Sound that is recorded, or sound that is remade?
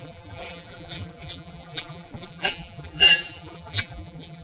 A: remade